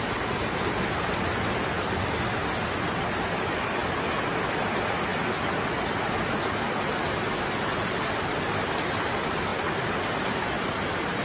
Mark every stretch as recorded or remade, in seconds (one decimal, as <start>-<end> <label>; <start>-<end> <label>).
0.0-9.5 recorded; 9.5-10.0 remade; 10.0-11.2 recorded